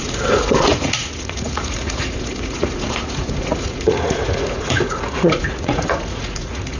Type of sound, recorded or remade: remade